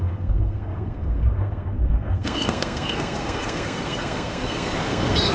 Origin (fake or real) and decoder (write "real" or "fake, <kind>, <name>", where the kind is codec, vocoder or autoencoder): fake, codec, SNAC